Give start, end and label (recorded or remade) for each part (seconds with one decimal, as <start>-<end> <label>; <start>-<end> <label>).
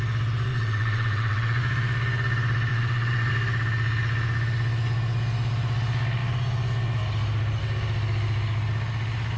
0.0-0.5 recorded; 0.5-1.6 remade; 1.6-2.7 recorded; 2.7-3.3 remade; 3.3-9.4 recorded